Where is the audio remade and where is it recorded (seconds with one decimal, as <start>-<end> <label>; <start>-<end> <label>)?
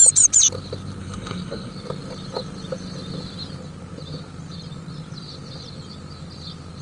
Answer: 0.0-1.0 recorded; 1.0-1.7 remade; 1.7-6.8 recorded